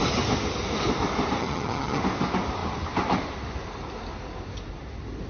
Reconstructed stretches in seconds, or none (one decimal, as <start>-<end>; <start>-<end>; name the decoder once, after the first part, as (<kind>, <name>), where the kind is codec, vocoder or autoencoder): 1.4-2.0 (vocoder, HiFi-GAN)